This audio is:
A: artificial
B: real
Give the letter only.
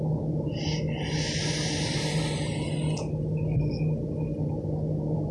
B